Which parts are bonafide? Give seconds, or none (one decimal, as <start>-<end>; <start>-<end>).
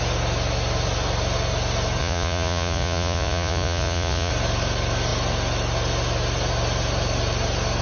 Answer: 0.0-2.0; 4.3-7.8